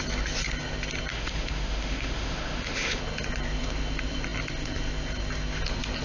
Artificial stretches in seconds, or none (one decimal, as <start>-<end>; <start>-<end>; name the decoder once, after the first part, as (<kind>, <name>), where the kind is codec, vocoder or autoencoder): 1.1-3.0 (autoencoder, DAC-VAE)